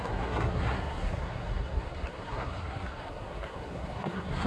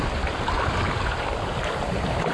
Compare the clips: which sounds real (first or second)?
second